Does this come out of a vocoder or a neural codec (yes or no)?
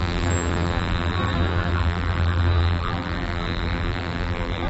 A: yes